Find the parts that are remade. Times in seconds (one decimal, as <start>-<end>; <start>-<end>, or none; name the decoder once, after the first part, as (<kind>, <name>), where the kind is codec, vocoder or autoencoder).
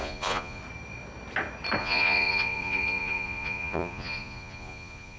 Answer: 0.0-0.6 (vocoder, Vocos); 1.8-5.2